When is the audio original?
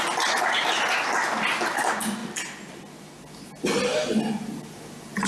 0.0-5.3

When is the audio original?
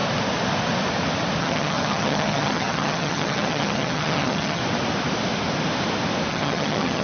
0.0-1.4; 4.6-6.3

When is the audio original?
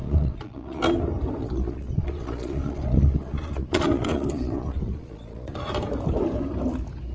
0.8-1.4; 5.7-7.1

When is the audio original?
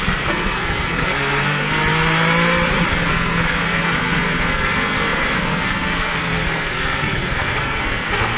1.8-2.9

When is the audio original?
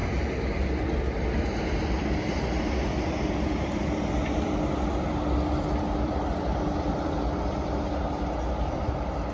0.0-9.3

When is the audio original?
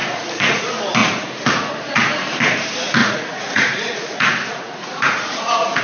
0.6-1.0; 2.0-3.0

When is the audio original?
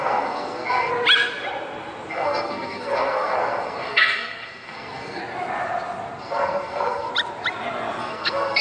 0.9-2.1; 5.2-6.2; 7.1-8.0